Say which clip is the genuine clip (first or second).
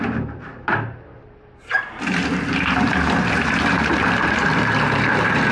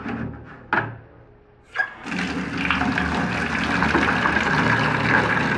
second